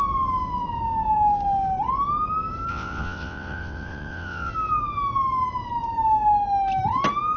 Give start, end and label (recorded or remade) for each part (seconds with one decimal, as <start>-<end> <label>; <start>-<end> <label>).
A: 0.0-2.7 recorded; 2.7-4.5 remade; 4.5-7.4 recorded